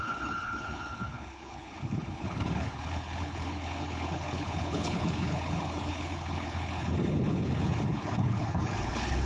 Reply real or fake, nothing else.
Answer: fake